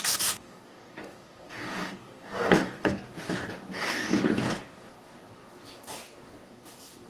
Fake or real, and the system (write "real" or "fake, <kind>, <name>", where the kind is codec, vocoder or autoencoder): fake, codec, DAC